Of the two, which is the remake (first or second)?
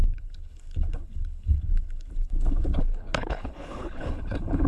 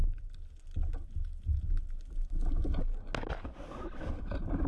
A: first